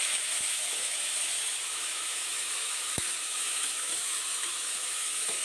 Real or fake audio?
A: fake